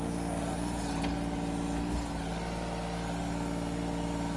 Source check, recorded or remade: recorded